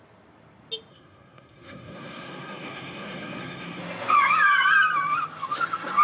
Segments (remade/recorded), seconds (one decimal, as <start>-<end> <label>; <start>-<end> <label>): 0.0-0.9 recorded; 0.9-3.8 remade; 3.8-6.0 recorded

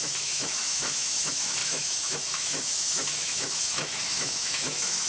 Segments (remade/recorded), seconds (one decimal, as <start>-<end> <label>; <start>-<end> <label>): 0.0-5.1 remade

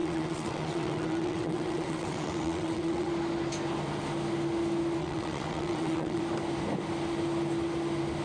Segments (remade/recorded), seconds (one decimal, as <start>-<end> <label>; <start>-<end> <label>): 0.0-3.1 remade; 3.1-5.0 recorded; 5.0-6.2 remade; 6.2-8.2 recorded

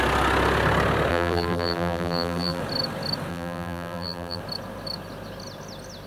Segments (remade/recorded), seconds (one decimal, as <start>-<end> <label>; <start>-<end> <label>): 0.0-1.1 recorded; 1.1-2.6 remade; 2.6-3.3 recorded; 3.3-4.4 remade; 4.4-6.1 recorded

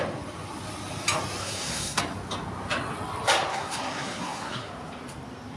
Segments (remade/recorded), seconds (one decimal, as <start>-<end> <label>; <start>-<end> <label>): 0.0-1.4 recorded; 1.4-2.0 remade; 2.0-3.5 recorded; 3.5-4.7 remade; 4.7-5.6 recorded

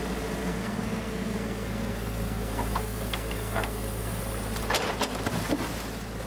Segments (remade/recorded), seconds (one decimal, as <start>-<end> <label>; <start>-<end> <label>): 0.0-0.4 recorded; 0.4-4.2 remade; 4.2-6.3 recorded